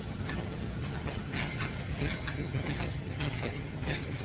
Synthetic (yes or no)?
yes